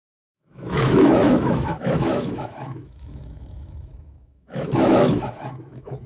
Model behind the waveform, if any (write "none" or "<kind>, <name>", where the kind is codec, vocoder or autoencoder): autoencoder, DAC-VAE